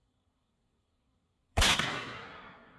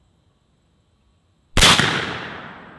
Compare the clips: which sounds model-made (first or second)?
first